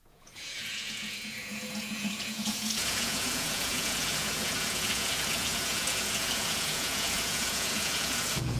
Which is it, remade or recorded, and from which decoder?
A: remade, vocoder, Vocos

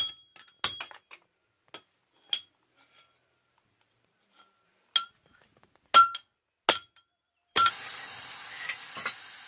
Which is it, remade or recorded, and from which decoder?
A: recorded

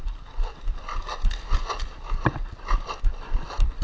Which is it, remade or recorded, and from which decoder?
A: recorded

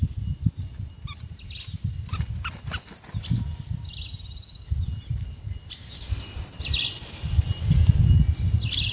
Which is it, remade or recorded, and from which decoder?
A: recorded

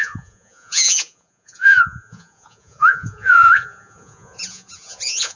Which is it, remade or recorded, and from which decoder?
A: remade, vocoder, Vocos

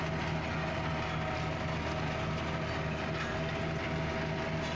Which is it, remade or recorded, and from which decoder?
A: recorded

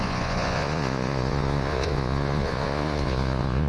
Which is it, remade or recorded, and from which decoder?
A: remade, vocoder, Vocos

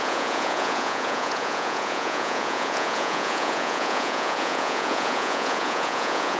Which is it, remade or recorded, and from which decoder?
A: remade, vocoder, Vocos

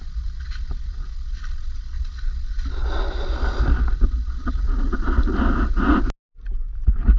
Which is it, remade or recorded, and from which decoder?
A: recorded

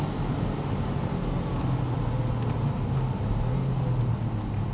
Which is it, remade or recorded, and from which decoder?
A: recorded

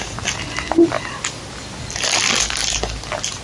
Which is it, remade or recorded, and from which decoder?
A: recorded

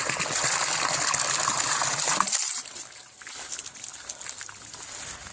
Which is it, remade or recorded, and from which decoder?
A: recorded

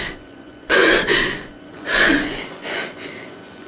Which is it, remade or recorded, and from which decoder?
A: remade, vocoder, Vocos